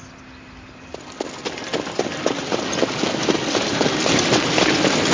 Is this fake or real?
real